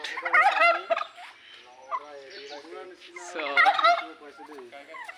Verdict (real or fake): real